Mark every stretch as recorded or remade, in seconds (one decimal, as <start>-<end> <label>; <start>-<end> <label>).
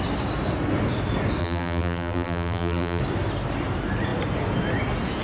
0.0-1.4 recorded; 1.4-3.0 remade; 3.0-5.2 recorded